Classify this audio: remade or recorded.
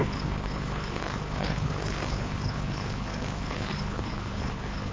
remade